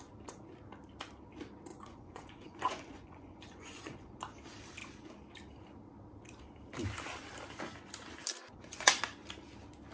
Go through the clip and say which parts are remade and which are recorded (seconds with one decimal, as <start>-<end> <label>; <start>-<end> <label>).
0.0-1.7 recorded; 1.7-4.1 remade; 4.1-8.4 recorded; 8.4-9.0 remade; 9.0-9.9 recorded